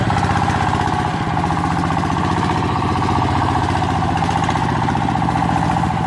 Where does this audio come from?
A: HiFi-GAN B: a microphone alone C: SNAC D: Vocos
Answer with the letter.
B